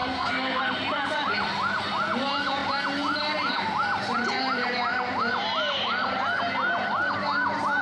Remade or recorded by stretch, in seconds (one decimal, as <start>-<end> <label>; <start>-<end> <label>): 0.0-0.6 remade; 0.6-7.8 recorded